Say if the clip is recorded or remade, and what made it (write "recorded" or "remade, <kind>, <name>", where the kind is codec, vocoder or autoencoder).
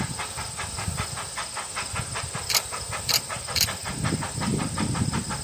recorded